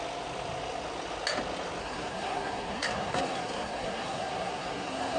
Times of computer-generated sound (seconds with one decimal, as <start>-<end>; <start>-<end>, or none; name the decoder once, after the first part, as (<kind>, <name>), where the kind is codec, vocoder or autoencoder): 1.8-5.2 (codec, SNAC)